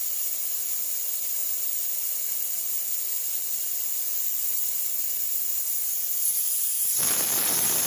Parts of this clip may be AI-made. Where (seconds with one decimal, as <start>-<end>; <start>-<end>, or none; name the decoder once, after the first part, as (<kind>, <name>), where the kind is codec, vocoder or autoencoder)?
none